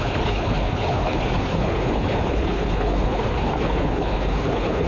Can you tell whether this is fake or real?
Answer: fake